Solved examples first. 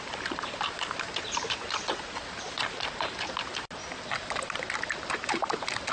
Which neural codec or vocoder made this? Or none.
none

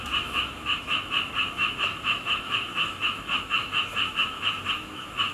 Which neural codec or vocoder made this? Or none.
autoencoder, DAC-VAE